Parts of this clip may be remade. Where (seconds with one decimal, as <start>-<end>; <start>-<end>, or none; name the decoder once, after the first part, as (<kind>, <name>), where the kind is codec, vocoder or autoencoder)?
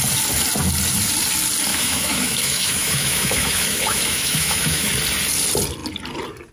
1.7-4.9 (autoencoder, DAC-VAE)